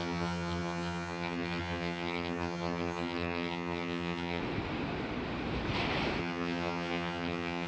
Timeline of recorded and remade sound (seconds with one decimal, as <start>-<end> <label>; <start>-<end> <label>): 0.0-4.4 remade; 4.4-6.2 recorded; 6.2-7.7 remade